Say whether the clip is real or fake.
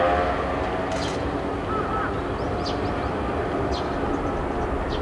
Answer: real